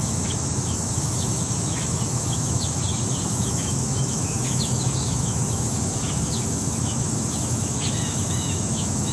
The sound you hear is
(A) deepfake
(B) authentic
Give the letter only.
A